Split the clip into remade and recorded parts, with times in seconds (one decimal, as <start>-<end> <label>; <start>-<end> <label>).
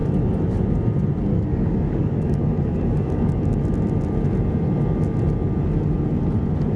0.0-1.3 recorded; 1.3-3.4 remade; 3.4-6.8 recorded